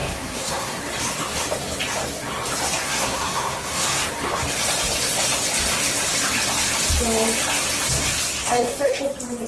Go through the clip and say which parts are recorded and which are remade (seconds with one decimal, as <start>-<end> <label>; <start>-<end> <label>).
0.0-0.8 remade; 0.8-2.8 recorded; 2.8-4.1 remade; 4.1-8.4 recorded; 8.4-9.0 remade; 9.0-9.5 recorded